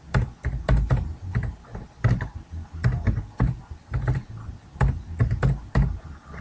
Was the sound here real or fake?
real